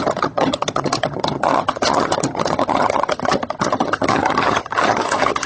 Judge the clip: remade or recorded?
remade